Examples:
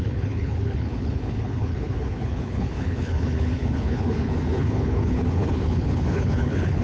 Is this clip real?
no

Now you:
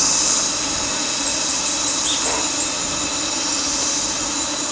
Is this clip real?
yes